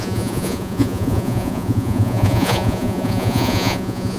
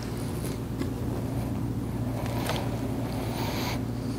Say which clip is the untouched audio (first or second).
second